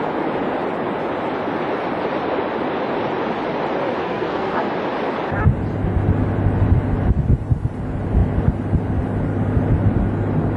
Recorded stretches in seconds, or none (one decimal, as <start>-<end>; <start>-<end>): 0.0-4.0; 4.7-10.6